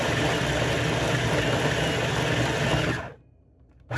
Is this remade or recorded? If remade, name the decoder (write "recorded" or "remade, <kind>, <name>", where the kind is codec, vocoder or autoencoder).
recorded